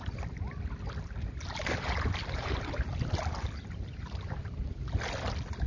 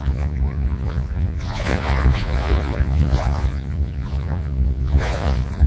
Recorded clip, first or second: first